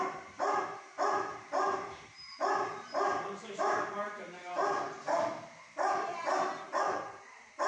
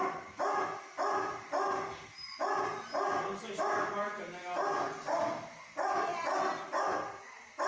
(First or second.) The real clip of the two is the second